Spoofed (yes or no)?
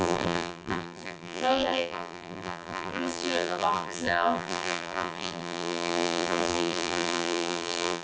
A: yes